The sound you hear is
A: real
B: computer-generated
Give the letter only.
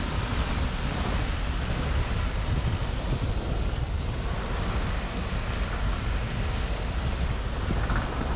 A